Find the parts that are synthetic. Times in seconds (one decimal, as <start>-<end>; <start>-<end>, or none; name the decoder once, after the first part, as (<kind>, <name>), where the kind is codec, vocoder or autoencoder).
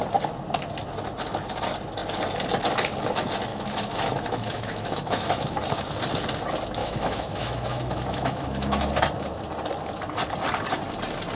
3.5-6.0 (autoencoder, DAC-VAE); 6.8-8.9